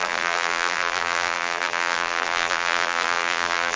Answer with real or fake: fake